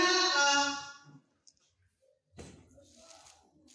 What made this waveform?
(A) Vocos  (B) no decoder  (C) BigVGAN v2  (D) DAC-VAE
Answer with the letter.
B